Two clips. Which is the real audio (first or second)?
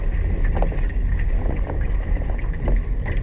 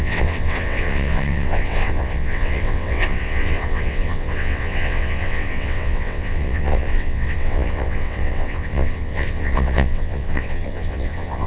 first